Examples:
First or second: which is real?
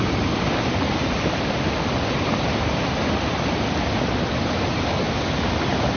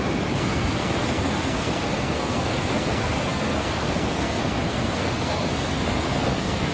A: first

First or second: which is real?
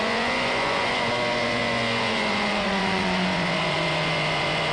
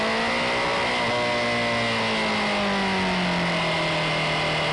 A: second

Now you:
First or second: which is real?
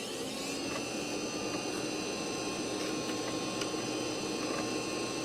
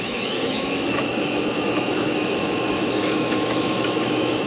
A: first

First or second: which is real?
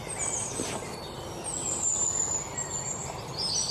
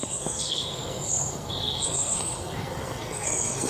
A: first